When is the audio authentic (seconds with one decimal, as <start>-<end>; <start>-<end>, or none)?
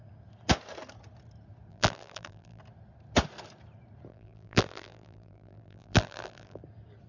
0.0-1.7; 2.6-4.1; 6.6-7.1